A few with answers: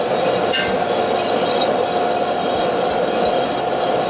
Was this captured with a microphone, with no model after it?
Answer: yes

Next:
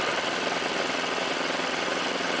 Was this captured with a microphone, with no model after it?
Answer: yes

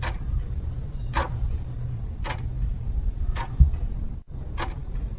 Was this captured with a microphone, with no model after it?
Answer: yes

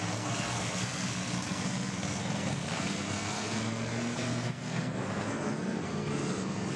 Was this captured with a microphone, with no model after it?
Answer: no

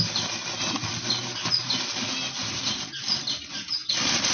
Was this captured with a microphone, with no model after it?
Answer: yes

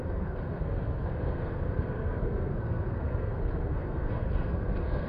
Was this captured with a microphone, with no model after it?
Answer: no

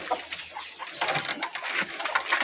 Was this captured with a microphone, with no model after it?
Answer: yes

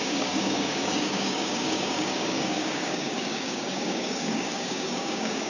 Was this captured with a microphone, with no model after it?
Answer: no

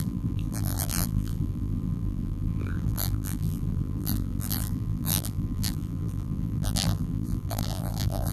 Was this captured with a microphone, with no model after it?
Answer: no